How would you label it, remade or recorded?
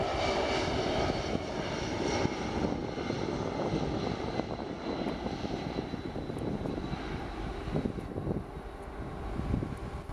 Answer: recorded